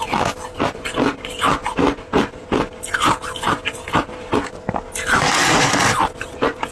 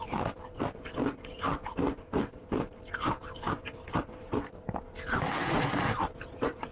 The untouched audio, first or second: first